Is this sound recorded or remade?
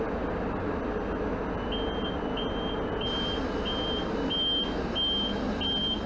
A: recorded